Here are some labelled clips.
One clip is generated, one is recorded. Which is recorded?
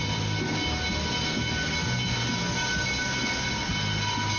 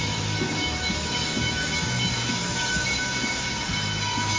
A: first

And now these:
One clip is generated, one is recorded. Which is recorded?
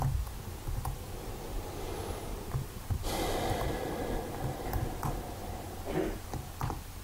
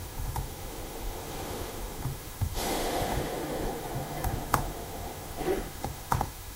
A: first